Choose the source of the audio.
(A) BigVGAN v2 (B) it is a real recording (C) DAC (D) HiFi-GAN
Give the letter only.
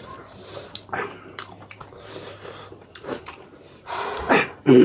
A